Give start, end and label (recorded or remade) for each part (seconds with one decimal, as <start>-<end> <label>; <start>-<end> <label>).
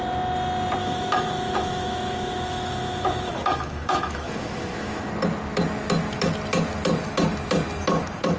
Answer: 0.0-0.8 recorded; 0.8-5.1 remade; 5.1-8.4 recorded